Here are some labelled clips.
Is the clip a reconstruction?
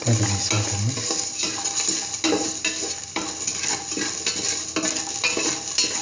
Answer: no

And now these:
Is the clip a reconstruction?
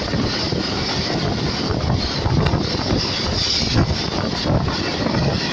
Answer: no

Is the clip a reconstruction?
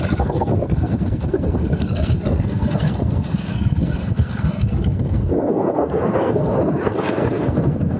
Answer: yes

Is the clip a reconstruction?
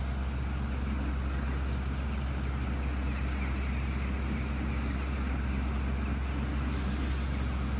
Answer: no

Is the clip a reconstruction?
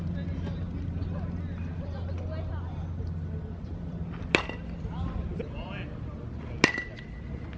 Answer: no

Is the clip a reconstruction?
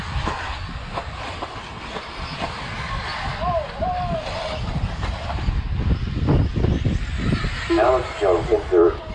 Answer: no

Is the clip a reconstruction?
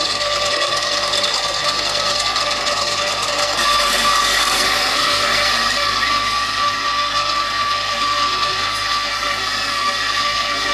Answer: yes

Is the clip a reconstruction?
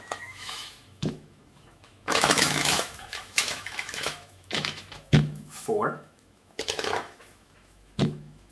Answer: yes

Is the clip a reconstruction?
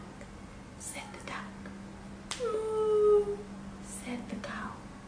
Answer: no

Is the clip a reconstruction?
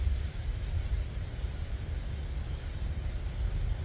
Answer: no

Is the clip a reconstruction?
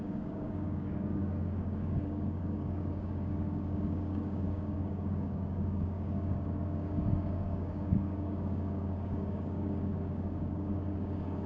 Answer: yes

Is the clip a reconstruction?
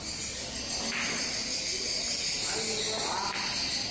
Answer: no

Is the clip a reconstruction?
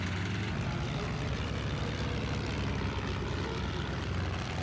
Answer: no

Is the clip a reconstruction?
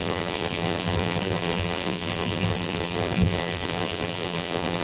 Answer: yes